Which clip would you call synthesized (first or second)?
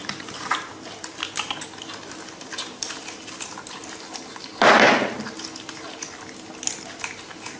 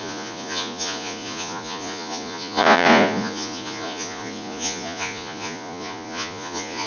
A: second